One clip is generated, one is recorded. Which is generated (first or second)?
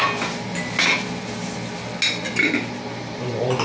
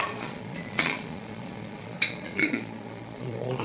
second